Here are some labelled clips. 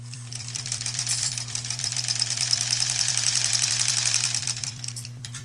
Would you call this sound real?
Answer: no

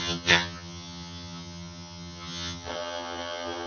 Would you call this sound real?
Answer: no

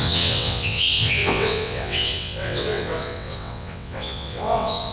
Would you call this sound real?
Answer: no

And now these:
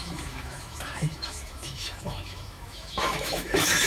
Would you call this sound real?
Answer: no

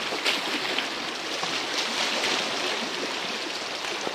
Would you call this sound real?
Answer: yes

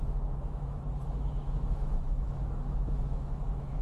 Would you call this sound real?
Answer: no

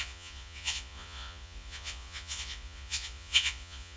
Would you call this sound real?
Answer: no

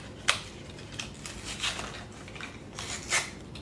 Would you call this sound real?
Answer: yes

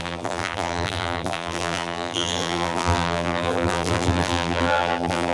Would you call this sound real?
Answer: no